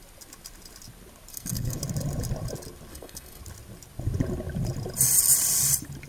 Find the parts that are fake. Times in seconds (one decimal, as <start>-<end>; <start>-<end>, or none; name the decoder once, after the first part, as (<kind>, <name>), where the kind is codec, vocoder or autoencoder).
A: 1.3-1.8 (codec, SNAC); 2.9-3.4